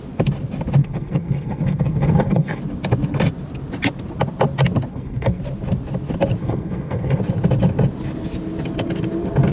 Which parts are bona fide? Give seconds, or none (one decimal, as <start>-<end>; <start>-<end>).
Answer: 0.0-0.8; 2.6-4.9; 5.4-6.4; 7.2-9.5